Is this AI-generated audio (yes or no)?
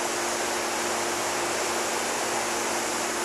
no